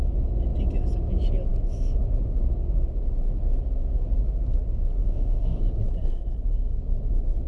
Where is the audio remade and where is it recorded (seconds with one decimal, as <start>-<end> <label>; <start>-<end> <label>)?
0.0-5.0 recorded; 5.0-5.6 remade; 5.6-7.5 recorded